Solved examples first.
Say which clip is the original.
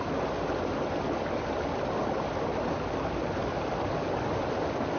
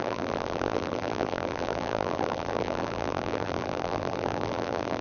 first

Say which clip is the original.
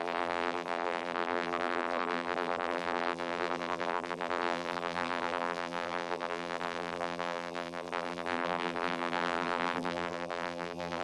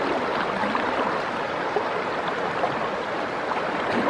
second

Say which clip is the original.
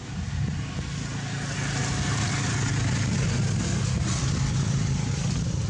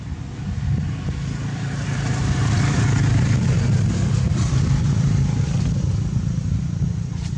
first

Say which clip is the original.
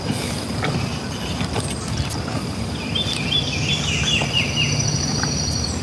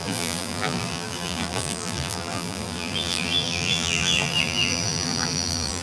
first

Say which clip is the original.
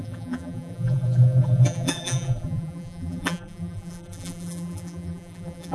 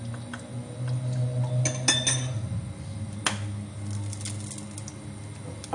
second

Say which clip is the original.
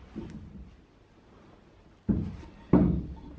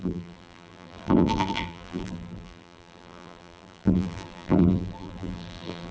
first